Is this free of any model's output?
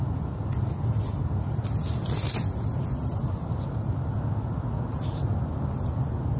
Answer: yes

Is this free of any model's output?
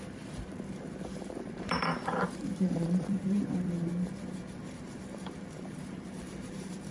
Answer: no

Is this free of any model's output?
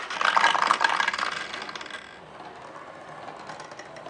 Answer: yes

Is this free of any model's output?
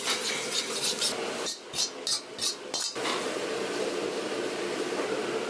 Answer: yes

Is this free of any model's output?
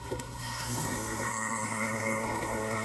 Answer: no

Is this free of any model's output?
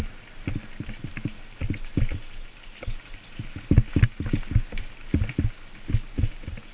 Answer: yes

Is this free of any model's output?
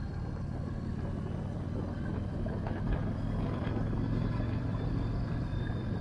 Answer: no